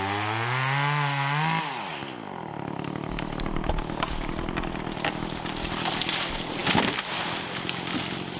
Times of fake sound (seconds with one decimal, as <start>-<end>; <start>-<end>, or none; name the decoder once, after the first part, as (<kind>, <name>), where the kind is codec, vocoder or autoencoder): none